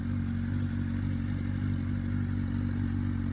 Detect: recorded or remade recorded